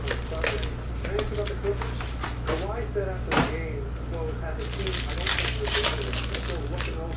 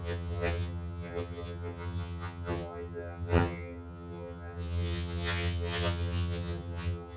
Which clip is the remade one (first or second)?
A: second